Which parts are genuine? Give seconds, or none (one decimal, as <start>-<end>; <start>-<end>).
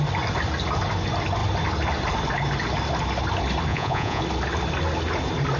0.0-3.7; 4.2-5.6